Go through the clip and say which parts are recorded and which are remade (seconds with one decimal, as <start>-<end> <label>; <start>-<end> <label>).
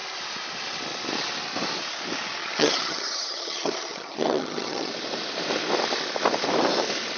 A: 0.0-2.4 recorded; 2.4-4.9 remade; 4.9-7.2 recorded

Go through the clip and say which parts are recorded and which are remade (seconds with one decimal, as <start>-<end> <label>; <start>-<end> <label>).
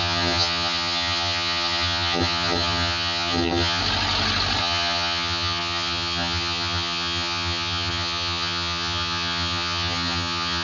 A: 0.0-3.8 remade; 3.8-4.6 recorded; 4.6-10.6 remade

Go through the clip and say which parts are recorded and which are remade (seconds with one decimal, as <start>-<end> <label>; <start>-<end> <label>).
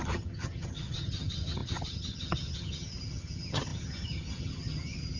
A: 0.0-5.2 remade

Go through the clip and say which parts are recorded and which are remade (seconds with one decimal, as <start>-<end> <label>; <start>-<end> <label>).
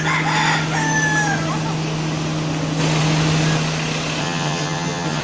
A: 0.0-4.2 recorded; 4.2-5.2 remade